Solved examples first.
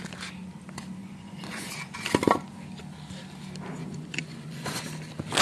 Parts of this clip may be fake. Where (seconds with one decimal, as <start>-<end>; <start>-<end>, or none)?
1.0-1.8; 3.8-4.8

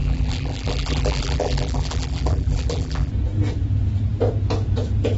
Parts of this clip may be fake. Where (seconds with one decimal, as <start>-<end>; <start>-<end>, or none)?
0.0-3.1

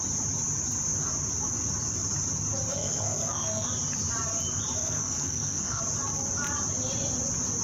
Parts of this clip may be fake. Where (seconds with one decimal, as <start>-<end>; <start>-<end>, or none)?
2.7-3.7; 4.8-5.8

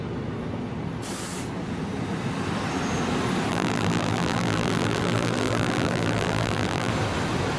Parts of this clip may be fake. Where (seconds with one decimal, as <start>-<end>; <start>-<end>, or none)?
3.5-6.9